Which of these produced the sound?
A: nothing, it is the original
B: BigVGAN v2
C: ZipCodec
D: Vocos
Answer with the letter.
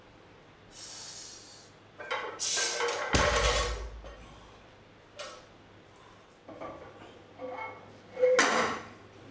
A